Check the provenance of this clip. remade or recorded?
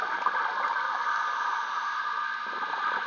recorded